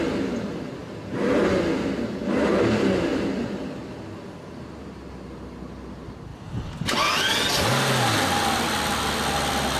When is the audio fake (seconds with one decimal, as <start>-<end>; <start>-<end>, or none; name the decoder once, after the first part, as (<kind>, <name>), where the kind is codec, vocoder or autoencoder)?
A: 0.8-1.4 (vocoder, BigVGAN v2)